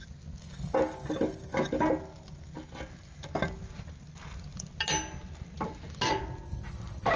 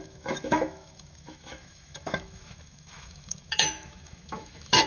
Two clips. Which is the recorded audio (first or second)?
first